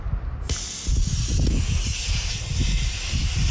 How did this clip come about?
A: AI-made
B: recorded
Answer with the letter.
B